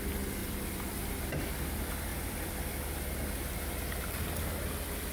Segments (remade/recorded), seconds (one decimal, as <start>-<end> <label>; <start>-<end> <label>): 0.0-0.4 recorded; 0.4-1.1 remade; 1.1-2.1 recorded; 2.1-2.7 remade; 2.7-5.1 recorded